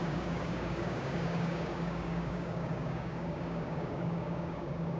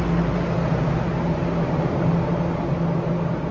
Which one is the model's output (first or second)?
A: first